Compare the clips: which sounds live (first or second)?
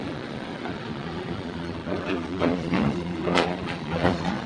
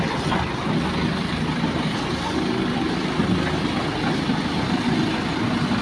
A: second